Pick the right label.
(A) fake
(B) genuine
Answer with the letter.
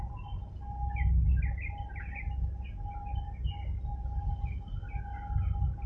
B